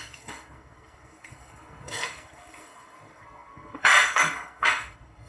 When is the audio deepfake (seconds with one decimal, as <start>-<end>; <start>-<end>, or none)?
0.0-5.3